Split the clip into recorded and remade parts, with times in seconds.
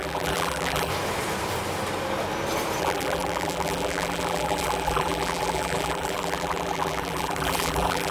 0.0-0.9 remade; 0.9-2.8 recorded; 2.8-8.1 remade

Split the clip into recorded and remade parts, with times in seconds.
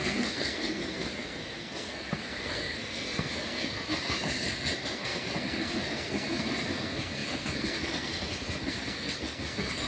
0.0-9.9 remade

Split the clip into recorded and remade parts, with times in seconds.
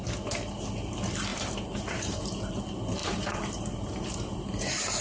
0.0-1.3 recorded; 1.3-2.5 remade; 2.5-3.0 recorded; 3.0-4.6 remade; 4.6-5.0 recorded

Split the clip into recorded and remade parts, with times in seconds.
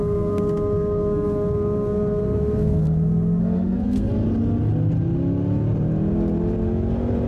0.0-4.1 remade; 4.1-7.3 recorded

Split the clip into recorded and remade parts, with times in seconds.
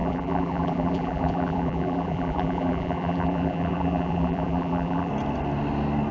0.0-5.1 remade; 5.1-6.1 recorded